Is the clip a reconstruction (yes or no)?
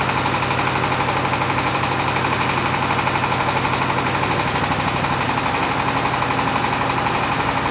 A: no